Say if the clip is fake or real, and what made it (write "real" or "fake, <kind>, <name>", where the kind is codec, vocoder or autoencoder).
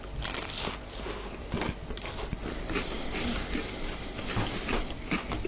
real